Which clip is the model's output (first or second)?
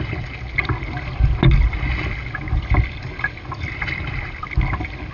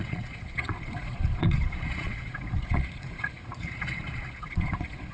second